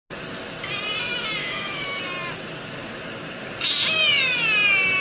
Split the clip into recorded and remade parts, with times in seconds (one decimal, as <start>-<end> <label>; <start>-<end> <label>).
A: 0.0-1.4 recorded; 1.4-2.0 remade; 2.0-5.0 recorded